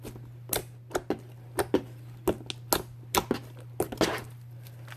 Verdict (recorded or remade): recorded